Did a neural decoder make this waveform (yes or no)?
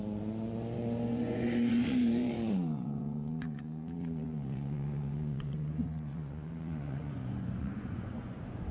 yes